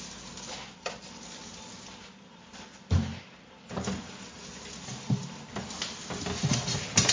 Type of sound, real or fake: real